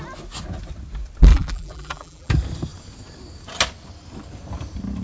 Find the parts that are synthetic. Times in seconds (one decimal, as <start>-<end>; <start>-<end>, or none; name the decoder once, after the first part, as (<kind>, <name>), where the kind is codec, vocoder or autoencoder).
1.3-2.3 (vocoder, BigVGAN v2)